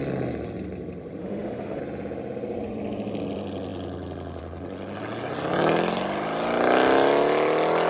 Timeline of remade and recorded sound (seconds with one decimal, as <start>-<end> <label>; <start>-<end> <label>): 0.0-1.2 recorded; 1.2-1.8 remade; 1.8-7.9 recorded